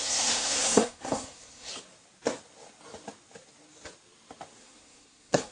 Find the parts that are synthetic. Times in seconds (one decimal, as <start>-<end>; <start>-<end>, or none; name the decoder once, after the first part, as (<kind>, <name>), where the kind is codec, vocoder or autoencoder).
0.0-1.7 (codec, SNAC); 4.6-5.5